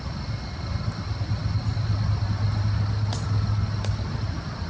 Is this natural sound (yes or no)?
yes